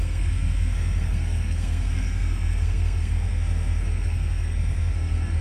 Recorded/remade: remade